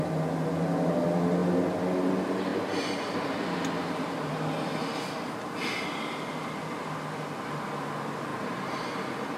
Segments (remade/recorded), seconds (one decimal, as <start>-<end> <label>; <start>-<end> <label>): 0.0-2.5 recorded; 2.5-4.4 remade; 4.4-8.3 recorded; 8.3-9.4 remade